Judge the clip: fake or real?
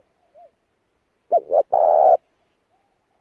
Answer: real